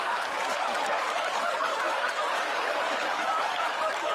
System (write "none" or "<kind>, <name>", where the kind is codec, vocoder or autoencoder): codec, DAC